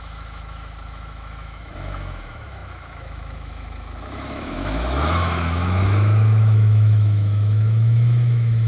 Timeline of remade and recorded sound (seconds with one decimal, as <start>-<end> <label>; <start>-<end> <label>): 0.0-8.7 remade